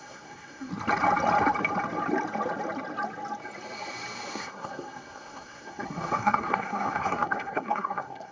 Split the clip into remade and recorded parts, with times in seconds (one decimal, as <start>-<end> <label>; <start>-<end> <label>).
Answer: 0.0-0.7 remade; 0.7-4.3 recorded; 4.3-8.3 remade

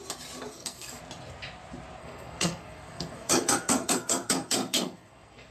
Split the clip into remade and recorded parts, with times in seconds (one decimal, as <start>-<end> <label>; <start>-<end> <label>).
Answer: 0.0-0.5 recorded; 0.5-1.0 remade; 1.0-2.0 recorded; 2.0-5.5 remade

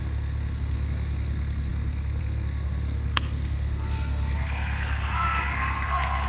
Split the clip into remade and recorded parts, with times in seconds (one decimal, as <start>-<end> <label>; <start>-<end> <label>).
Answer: 0.0-6.3 remade

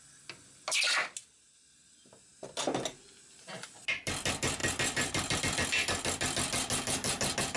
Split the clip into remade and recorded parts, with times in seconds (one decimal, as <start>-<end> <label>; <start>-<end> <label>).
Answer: 0.0-7.6 recorded

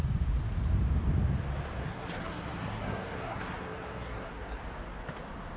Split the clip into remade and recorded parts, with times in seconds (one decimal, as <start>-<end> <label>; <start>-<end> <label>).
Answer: 0.0-1.8 recorded; 1.8-4.6 remade; 4.6-5.6 recorded

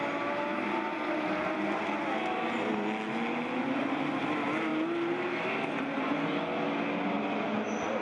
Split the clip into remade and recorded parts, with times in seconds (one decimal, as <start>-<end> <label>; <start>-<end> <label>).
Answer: 0.0-8.0 recorded